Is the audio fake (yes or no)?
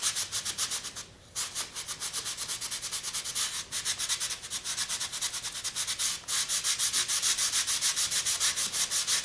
no